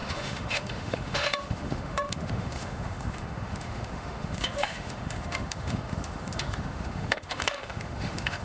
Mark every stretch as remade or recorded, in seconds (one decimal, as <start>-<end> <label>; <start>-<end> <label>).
0.0-8.4 remade